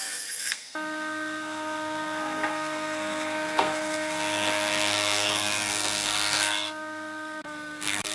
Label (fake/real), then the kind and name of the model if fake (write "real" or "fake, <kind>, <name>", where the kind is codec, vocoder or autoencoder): fake, codec, SNAC